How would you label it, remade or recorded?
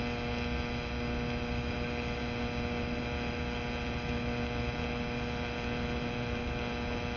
recorded